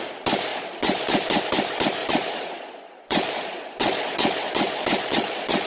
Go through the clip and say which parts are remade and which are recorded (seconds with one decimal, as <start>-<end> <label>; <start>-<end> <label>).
0.0-0.5 recorded; 0.5-1.4 remade; 1.4-2.0 recorded; 2.0-5.7 remade